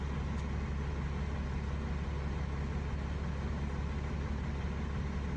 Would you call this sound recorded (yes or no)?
yes